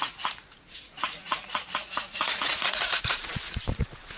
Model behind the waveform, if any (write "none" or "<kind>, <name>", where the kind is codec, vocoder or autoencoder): vocoder, Vocos